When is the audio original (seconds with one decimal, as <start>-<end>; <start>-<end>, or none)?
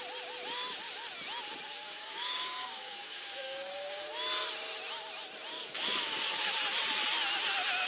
0.0-1.7; 4.1-5.5; 6.4-7.9